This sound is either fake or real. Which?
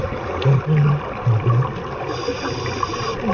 real